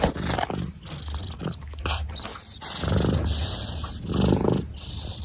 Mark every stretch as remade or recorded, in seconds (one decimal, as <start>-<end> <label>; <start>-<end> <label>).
0.0-5.2 recorded